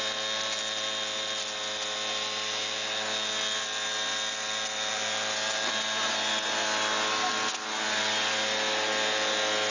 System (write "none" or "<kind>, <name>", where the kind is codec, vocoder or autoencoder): none